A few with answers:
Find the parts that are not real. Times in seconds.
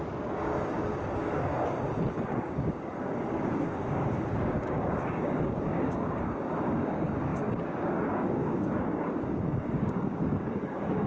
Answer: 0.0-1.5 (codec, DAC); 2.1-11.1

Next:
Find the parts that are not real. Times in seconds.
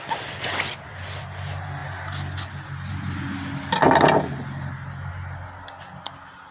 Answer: none